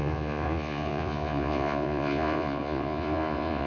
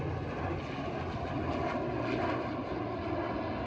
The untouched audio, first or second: second